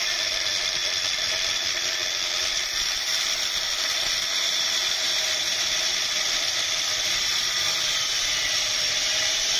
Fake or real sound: fake